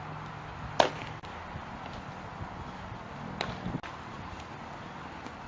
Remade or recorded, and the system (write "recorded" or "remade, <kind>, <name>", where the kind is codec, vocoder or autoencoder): recorded